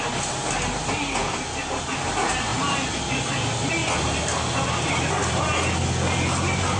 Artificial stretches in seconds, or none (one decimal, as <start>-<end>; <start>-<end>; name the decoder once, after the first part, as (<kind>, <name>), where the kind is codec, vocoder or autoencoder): none